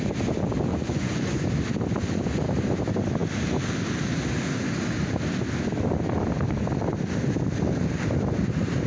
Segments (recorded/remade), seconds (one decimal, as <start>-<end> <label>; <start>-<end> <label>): 0.0-0.7 recorded; 0.7-1.5 remade; 1.5-8.9 recorded